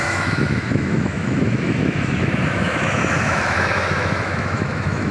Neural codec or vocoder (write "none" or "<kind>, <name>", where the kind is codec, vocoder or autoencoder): autoencoder, DAC-VAE